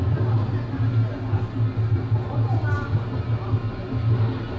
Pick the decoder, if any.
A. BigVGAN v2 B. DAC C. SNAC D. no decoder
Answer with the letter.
D